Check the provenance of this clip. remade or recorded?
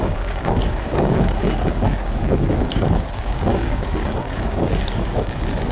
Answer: remade